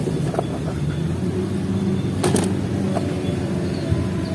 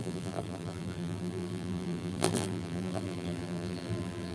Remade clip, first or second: second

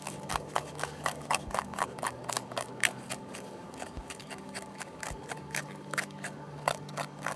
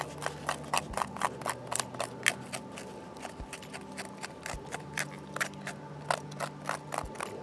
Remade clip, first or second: first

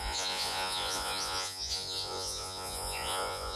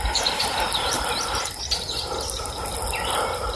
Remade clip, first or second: first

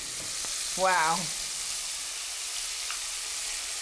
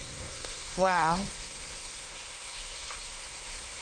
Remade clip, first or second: second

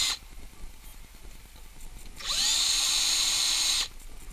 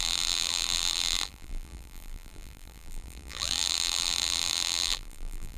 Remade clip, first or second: second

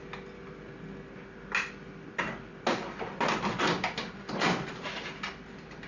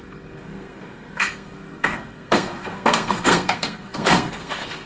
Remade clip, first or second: second